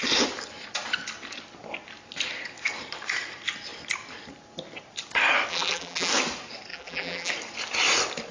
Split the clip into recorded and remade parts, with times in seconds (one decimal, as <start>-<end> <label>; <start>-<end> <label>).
0.0-5.5 recorded; 5.5-6.1 remade; 6.1-6.7 recorded; 6.7-7.3 remade; 7.3-8.3 recorded